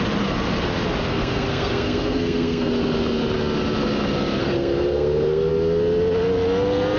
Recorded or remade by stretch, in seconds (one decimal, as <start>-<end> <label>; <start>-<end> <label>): 0.0-1.1 recorded; 1.1-2.7 remade; 2.7-4.4 recorded; 4.4-5.5 remade; 5.5-7.0 recorded